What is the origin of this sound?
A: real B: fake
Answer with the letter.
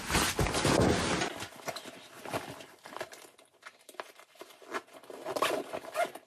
A